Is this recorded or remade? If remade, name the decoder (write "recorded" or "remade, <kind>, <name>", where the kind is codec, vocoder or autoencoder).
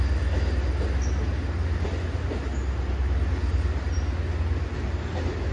recorded